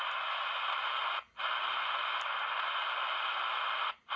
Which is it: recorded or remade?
recorded